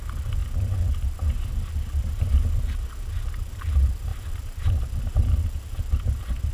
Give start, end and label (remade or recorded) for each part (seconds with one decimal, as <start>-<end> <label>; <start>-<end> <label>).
0.0-4.1 recorded; 4.1-5.3 remade; 5.3-6.5 recorded